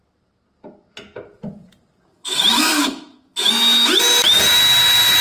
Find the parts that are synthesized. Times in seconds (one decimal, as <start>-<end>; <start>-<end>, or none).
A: 2.1-3.5